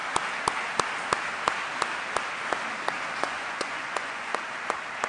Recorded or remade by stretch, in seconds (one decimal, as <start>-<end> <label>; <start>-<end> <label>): 0.0-3.1 recorded; 3.1-4.3 remade; 4.3-5.1 recorded